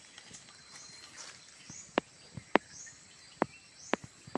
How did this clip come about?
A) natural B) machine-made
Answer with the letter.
A